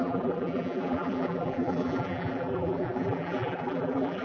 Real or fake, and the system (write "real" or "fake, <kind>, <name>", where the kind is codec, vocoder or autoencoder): fake, vocoder, BigVGAN v2